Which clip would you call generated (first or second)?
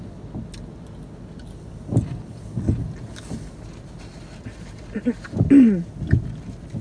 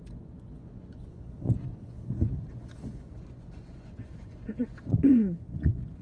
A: second